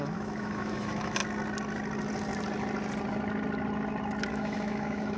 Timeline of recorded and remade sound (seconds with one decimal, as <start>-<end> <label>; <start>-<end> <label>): 0.0-1.2 remade; 1.2-4.3 recorded; 4.3-5.2 remade